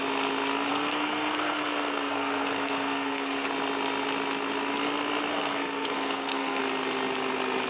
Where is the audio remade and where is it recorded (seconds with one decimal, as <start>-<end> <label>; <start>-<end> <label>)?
0.0-0.7 recorded; 0.7-3.5 remade; 3.5-5.3 recorded; 5.3-6.6 remade; 6.6-7.7 recorded